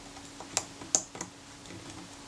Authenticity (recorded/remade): recorded